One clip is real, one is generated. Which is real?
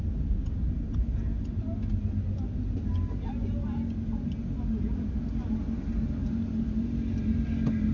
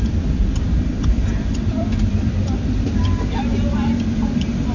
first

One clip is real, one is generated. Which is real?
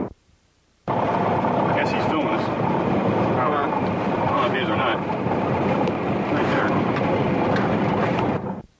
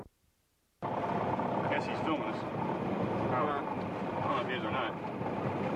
second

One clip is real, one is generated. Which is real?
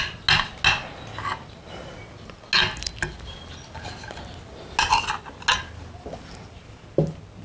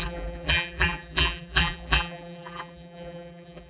first